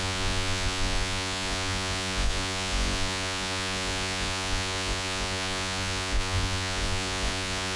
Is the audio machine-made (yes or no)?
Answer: yes